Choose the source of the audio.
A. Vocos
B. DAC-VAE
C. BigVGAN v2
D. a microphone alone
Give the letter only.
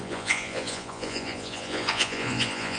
A